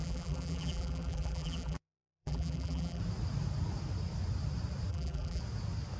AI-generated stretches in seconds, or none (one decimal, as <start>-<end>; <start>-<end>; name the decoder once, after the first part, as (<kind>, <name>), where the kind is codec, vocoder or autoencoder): 0.0-3.0 (vocoder, BigVGAN v2); 4.9-5.4